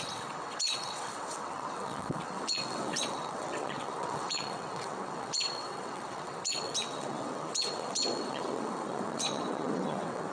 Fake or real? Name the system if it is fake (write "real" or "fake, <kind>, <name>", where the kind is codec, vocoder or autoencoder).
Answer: fake, vocoder, WaveNeXt